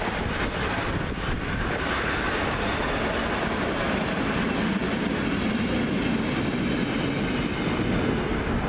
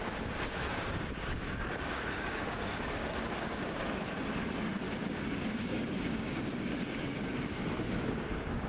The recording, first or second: first